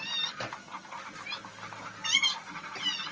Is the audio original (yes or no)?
yes